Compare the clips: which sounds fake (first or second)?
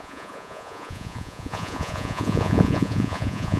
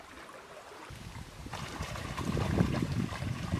first